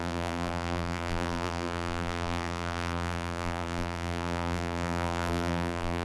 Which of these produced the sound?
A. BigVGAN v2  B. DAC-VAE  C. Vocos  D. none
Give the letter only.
A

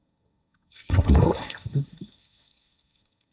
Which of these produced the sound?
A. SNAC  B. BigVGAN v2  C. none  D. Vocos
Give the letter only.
A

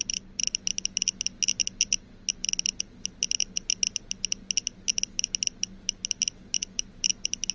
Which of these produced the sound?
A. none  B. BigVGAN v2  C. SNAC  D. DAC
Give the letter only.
A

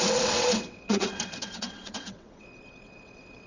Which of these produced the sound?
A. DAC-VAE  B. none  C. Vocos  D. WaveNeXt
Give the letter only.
D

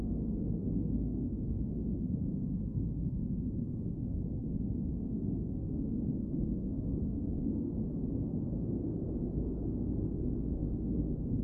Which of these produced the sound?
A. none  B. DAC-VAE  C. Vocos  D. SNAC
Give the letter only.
D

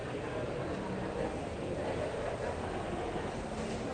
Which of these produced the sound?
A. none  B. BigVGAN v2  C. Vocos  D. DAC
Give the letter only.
A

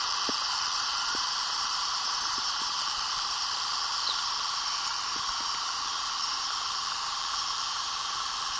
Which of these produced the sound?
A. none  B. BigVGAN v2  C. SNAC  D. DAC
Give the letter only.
B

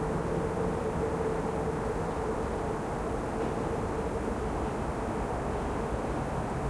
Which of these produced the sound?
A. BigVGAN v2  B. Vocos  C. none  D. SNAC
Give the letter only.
C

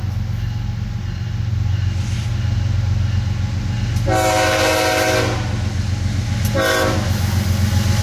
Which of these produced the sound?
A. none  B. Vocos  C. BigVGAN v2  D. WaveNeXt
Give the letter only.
A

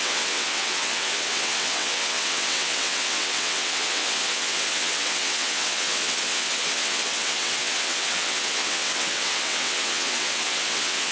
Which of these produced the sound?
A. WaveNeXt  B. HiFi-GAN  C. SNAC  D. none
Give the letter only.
A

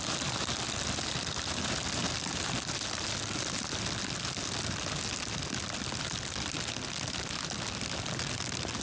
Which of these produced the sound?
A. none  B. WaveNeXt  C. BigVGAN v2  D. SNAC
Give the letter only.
A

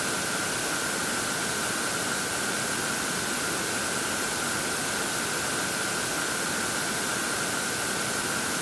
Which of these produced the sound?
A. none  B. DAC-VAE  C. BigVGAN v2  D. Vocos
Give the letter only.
C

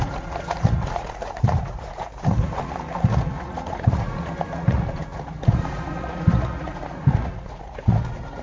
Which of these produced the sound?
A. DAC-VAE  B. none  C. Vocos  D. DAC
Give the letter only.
C